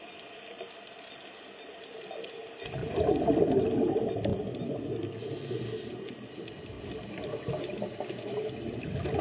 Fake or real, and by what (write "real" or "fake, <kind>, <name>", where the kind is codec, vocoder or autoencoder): real